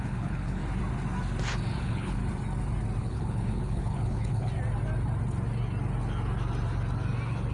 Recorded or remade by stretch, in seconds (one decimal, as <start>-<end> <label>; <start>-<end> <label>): 0.0-0.6 remade; 0.6-1.8 recorded; 1.8-2.2 remade; 2.2-3.0 recorded; 3.0-4.5 remade; 4.5-7.5 recorded